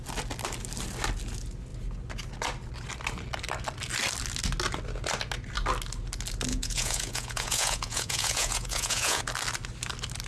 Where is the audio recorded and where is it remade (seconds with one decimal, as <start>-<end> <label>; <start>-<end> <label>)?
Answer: 0.0-6.5 recorded; 6.5-9.2 remade; 9.2-10.3 recorded